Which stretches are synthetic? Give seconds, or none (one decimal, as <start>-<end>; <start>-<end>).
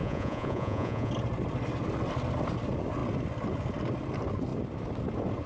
0.0-1.1